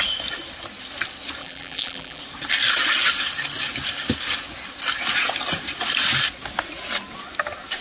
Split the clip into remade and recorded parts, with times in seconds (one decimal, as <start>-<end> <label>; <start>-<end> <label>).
0.0-1.4 recorded; 1.4-2.2 remade; 2.2-7.8 recorded